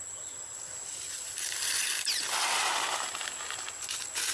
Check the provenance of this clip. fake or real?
real